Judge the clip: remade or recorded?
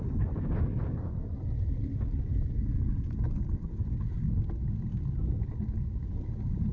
recorded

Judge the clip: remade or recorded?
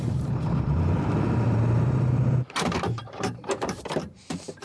remade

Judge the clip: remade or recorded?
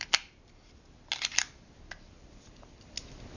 recorded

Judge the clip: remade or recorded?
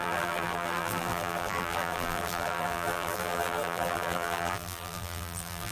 remade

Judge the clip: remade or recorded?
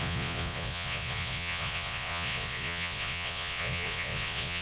remade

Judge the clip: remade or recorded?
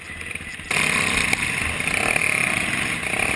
recorded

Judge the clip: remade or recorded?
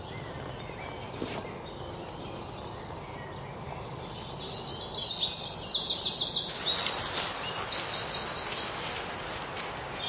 recorded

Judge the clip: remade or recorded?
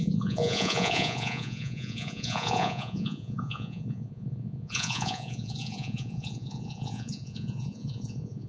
remade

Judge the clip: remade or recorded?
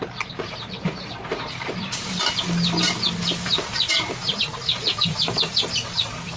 remade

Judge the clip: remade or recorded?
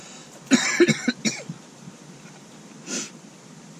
remade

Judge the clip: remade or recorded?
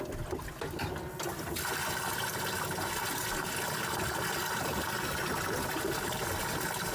recorded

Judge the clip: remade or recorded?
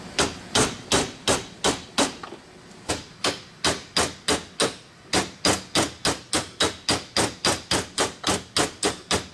recorded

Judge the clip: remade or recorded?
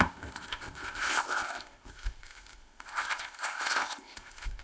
remade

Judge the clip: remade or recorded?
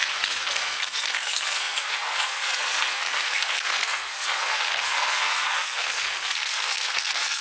remade